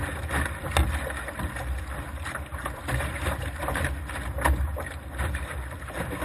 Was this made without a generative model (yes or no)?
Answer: yes